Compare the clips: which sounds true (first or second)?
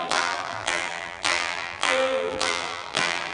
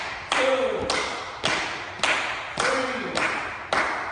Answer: second